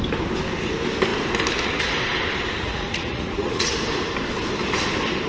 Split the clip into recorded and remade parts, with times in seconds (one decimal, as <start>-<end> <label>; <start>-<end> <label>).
0.0-2.6 recorded; 2.6-3.7 remade; 3.7-5.3 recorded